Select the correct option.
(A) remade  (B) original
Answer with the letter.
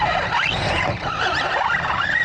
A